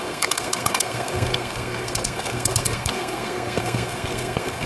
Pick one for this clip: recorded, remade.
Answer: remade